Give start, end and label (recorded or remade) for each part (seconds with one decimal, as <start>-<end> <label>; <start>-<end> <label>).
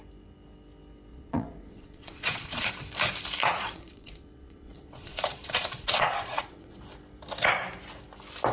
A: 0.0-1.1 recorded; 1.1-2.7 remade; 2.7-3.4 recorded; 3.4-6.7 remade; 6.7-8.5 recorded